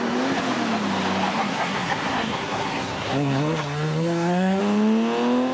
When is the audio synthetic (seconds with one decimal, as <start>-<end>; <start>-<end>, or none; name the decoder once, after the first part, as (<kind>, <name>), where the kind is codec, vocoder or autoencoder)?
1.3-4.6 (codec, SNAC)